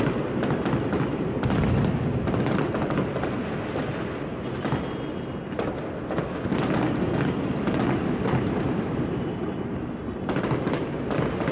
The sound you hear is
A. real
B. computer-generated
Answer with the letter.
A